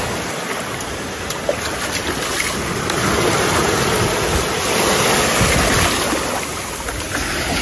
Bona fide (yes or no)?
yes